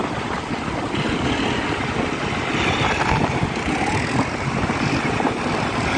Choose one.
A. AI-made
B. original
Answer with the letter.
B